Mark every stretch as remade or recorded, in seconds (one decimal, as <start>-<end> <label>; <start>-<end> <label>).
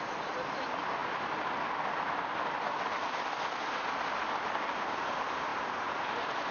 0.0-6.5 recorded